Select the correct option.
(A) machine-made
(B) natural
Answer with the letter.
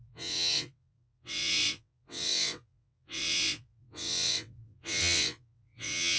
A